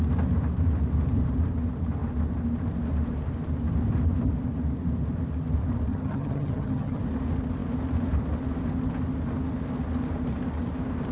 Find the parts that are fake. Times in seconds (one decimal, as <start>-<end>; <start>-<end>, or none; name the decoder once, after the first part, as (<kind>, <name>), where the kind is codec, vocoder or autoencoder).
5.9-7.0 (vocoder, HiFi-GAN)